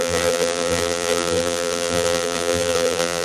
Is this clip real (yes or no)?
no